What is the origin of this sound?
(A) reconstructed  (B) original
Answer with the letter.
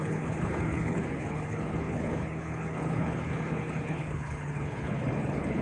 A